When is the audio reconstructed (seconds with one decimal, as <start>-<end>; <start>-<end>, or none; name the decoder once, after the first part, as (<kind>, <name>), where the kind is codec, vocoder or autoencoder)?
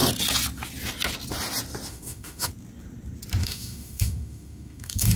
1.9-2.5 (autoencoder, DAC-VAE); 3.4-5.2